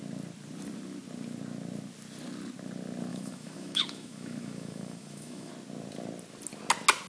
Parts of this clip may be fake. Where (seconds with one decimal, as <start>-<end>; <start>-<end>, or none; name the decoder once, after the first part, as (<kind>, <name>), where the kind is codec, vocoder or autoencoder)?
3.1-5.5 (autoencoder, DAC-VAE)